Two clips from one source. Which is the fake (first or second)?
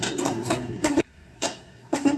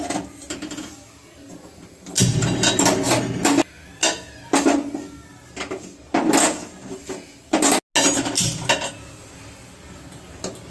first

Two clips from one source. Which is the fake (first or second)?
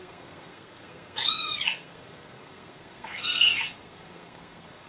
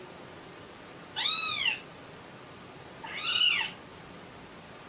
first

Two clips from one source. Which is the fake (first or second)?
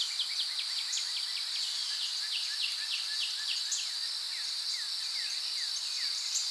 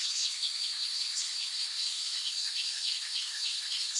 second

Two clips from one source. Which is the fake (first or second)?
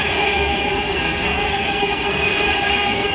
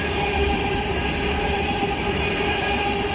first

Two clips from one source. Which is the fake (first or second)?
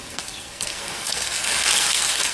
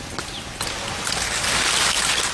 first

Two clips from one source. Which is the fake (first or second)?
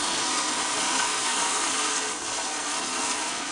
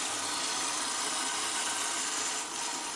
first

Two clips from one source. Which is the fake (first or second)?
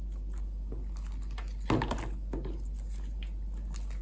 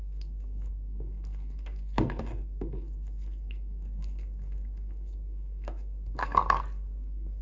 second